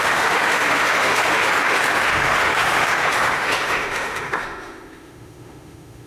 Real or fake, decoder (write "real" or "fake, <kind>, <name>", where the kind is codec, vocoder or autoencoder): fake, autoencoder, DAC-VAE